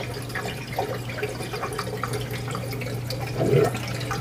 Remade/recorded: recorded